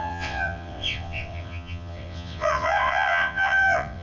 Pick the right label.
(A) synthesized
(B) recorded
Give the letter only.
A